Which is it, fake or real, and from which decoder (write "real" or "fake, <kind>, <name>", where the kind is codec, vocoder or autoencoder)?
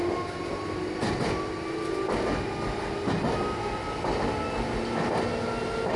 real